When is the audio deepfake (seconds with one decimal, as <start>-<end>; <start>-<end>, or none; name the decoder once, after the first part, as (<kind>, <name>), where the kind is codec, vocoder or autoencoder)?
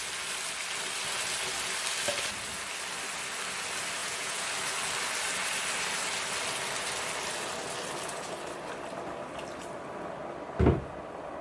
4.0-4.5 (vocoder, Vocos)